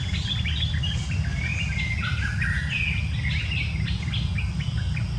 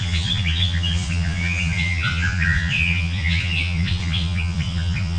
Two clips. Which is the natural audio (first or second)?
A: first